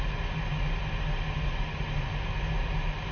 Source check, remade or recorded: recorded